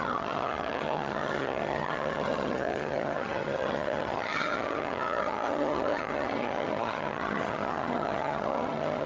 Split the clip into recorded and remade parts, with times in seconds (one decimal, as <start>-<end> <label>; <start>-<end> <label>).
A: 0.0-9.1 remade